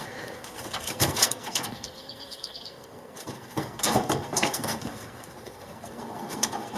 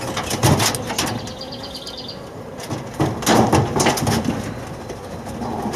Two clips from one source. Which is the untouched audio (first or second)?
second